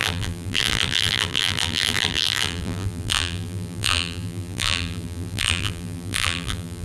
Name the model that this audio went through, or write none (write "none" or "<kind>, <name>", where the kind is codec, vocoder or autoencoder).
vocoder, BigVGAN v2